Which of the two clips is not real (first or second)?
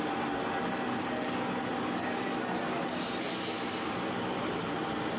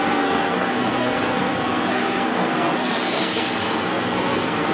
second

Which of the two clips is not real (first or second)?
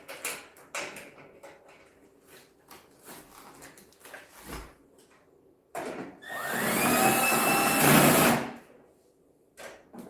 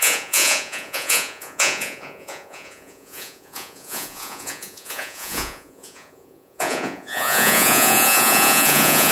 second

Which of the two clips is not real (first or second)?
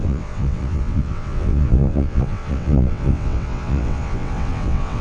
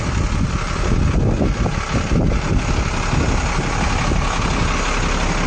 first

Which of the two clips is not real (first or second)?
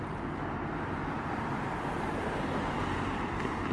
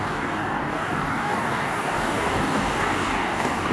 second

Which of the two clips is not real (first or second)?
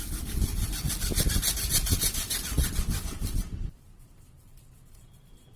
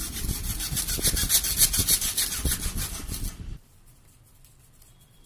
first